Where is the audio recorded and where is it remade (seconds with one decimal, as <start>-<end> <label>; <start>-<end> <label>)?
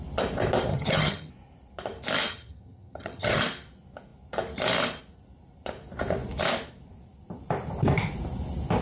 0.0-0.7 recorded; 0.7-1.3 remade; 1.3-2.3 recorded; 2.3-3.4 remade; 3.4-8.8 recorded